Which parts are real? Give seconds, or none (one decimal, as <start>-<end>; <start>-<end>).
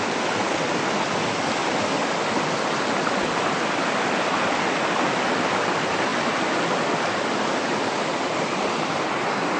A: 0.0-9.6